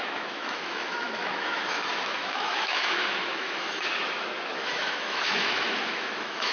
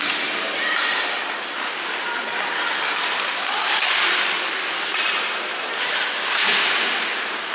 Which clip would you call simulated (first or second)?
first